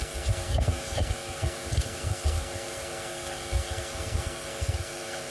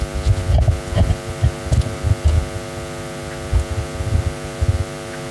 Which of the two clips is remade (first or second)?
first